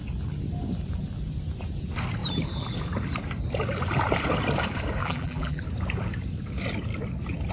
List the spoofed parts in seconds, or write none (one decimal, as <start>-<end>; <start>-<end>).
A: 5.0-5.6